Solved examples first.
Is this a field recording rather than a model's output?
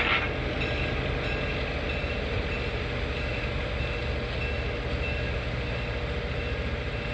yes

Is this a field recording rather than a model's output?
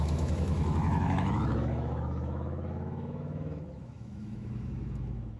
no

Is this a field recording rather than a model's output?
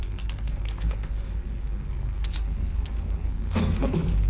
no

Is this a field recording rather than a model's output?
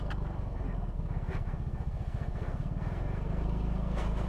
no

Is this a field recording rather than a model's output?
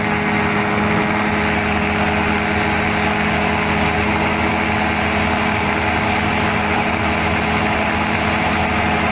yes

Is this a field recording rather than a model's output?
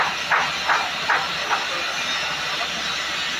yes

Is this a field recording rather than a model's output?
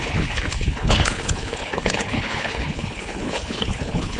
no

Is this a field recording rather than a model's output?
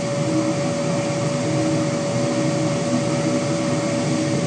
yes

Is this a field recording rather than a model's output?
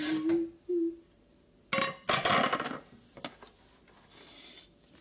yes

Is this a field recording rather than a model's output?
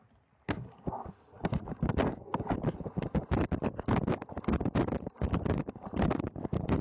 yes